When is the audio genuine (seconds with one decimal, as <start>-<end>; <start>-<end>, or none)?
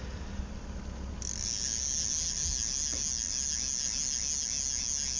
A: 0.0-5.2